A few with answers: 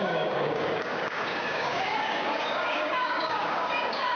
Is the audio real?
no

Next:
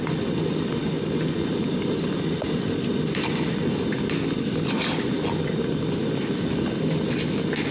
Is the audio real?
yes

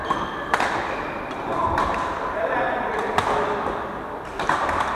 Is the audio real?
no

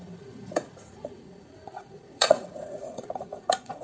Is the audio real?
no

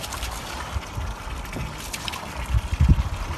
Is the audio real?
yes